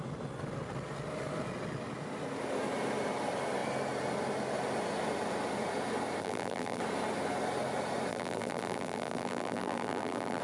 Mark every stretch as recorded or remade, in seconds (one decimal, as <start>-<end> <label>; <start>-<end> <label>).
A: 0.0-6.2 recorded; 6.2-6.8 remade; 6.8-8.1 recorded; 8.1-10.4 remade